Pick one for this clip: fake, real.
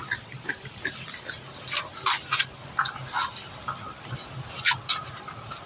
real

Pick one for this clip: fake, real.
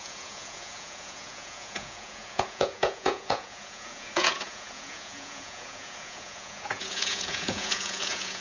fake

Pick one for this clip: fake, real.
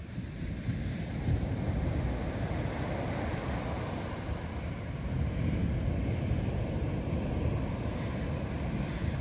real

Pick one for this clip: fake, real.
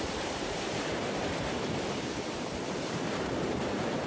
fake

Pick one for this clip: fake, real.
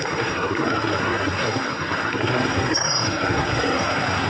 fake